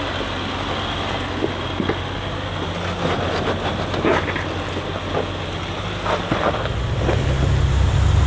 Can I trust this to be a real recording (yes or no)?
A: yes